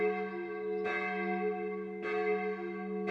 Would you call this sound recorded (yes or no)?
yes